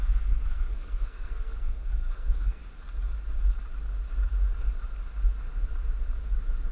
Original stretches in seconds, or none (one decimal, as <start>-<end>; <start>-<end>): 2.6-6.7